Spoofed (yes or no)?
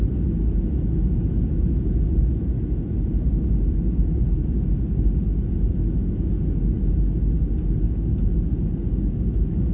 no